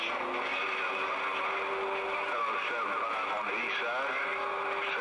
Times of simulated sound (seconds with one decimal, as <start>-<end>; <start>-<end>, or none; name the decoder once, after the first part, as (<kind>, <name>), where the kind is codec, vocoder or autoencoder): none